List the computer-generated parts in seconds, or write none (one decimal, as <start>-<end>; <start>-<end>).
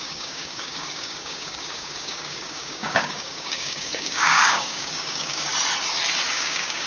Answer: 0.0-5.5; 6.3-6.9